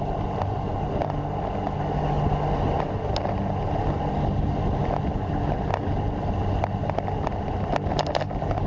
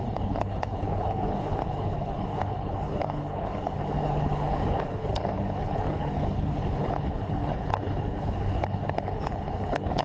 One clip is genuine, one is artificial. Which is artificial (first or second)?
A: second